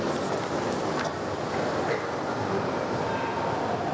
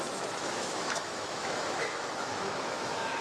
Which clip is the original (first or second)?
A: first